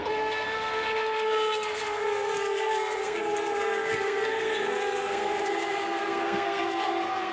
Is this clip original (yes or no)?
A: no